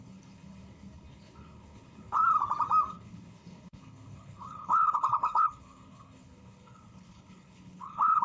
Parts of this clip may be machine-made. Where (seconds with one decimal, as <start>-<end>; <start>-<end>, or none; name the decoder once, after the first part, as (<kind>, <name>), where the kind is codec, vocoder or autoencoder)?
0.0-2.2 (codec, HILCodec); 2.9-8.2